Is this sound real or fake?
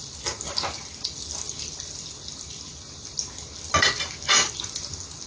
real